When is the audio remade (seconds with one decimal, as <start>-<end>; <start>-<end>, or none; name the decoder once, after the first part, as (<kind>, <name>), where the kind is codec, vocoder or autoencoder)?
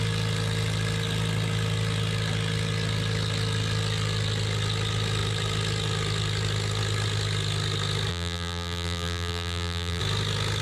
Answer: 8.1-10.0 (vocoder, BigVGAN v2)